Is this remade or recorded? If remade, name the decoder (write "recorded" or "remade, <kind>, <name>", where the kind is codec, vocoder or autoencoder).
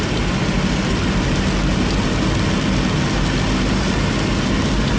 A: recorded